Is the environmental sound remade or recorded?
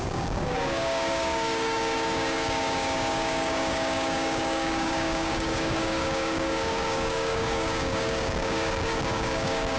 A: remade